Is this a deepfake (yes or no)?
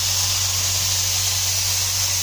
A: no